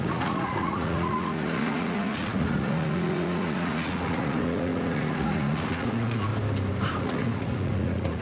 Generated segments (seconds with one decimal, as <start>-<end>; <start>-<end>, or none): 0.0-6.3; 7.0-8.2